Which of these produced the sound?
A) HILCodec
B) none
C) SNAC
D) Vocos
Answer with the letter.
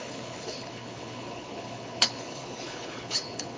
A